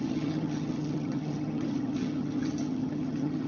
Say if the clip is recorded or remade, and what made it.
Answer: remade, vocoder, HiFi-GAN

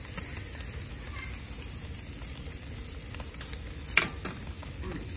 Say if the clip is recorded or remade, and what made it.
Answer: recorded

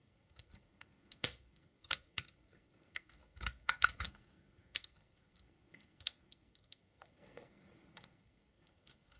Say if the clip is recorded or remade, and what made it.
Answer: remade, codec, SNAC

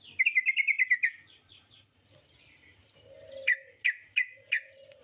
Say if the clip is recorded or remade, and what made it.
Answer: recorded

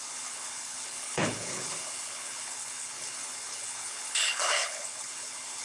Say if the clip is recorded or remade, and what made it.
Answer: remade, codec, HILCodec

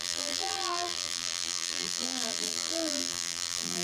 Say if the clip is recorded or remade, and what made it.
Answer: remade, vocoder, BigVGAN v2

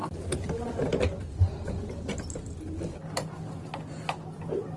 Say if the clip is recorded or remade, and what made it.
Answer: recorded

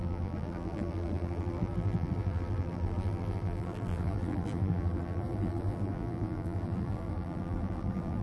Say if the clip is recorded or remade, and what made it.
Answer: remade, vocoder, BigVGAN v2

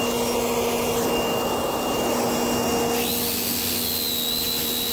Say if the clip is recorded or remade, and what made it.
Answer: recorded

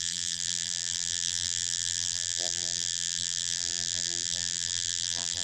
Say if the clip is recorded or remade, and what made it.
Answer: remade, vocoder, BigVGAN v2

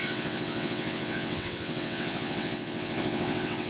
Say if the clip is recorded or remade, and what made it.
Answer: remade, vocoder, WaveNeXt